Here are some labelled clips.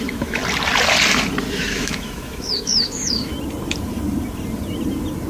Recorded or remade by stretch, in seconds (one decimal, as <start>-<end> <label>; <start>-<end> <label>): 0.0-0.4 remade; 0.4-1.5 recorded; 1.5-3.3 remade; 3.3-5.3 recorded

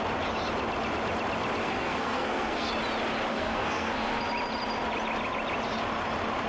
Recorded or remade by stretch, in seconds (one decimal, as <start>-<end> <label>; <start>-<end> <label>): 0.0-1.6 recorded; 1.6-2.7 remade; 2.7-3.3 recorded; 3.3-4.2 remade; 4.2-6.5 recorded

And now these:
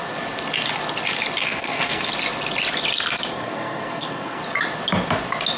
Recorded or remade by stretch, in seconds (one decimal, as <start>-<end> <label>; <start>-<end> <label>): 0.0-1.4 recorded; 1.4-2.1 remade; 2.1-3.3 recorded; 3.3-4.4 remade; 4.4-5.6 recorded

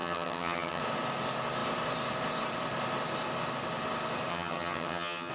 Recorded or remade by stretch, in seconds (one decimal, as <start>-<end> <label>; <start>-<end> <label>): 0.0-0.8 remade; 0.8-4.3 recorded; 4.3-5.3 remade